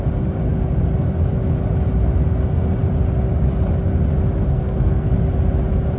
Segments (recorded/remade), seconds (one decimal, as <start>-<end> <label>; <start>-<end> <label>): 0.0-4.4 recorded; 4.4-5.1 remade; 5.1-6.0 recorded